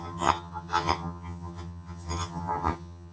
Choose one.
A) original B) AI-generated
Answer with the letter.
B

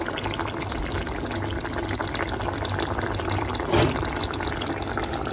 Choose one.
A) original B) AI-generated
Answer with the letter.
A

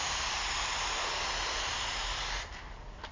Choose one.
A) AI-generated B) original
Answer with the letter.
B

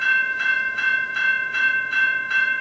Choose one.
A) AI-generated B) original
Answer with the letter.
A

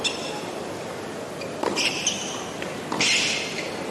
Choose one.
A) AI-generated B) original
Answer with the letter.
B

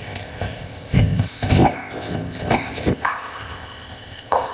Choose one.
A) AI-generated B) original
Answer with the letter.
A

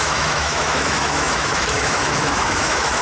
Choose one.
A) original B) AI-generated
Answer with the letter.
B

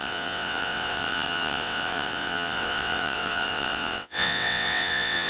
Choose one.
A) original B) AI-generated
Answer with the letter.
B